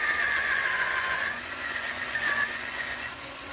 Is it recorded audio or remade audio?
remade